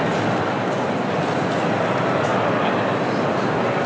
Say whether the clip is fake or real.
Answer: real